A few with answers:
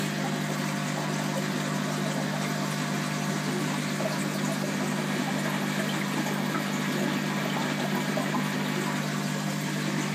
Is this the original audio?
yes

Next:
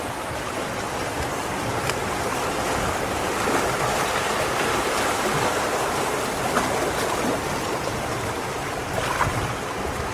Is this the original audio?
no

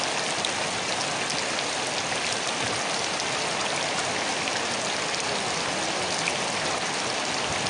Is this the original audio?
yes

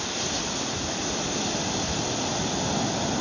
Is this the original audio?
yes